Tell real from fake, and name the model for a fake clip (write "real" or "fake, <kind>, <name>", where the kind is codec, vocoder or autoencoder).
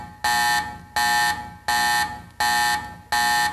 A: real